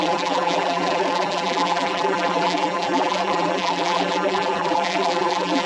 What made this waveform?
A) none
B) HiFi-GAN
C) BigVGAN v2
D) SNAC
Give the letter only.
C